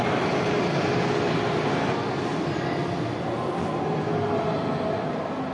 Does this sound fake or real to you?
real